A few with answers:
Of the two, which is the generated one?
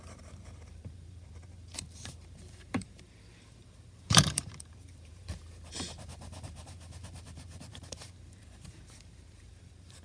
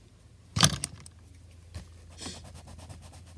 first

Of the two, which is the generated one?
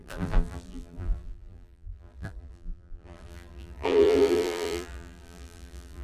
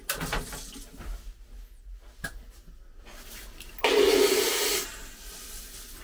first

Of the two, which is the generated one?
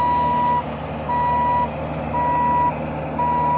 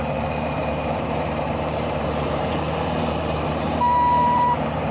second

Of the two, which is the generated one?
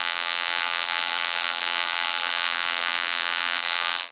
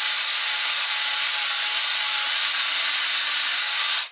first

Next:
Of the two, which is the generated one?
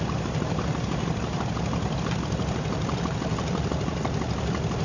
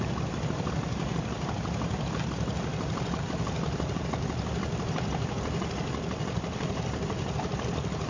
second